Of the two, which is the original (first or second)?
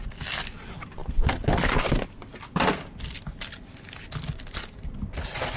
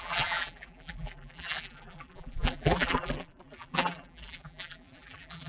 first